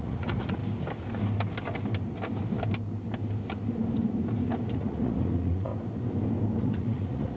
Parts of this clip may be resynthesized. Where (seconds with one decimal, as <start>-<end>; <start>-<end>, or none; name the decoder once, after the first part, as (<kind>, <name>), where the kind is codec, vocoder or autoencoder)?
0.0-0.6 (vocoder, Vocos); 4.7-5.7; 6.6-7.4